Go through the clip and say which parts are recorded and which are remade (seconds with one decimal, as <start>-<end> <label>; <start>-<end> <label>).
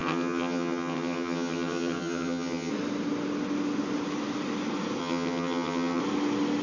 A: 0.0-2.7 remade; 2.7-5.0 recorded; 5.0-6.0 remade; 6.0-6.6 recorded